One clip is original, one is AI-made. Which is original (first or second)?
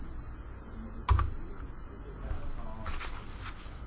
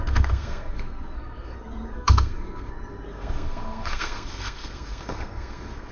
first